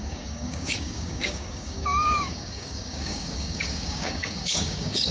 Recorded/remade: remade